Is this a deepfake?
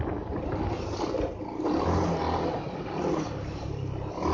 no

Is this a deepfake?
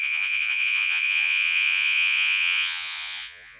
yes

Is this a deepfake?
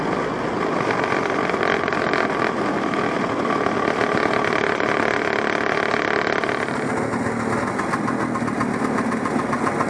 no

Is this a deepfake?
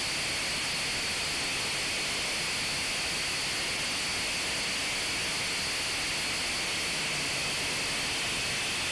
no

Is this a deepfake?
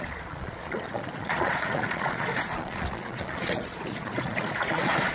yes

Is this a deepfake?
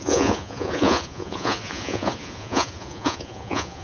yes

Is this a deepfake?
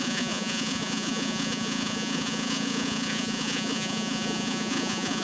yes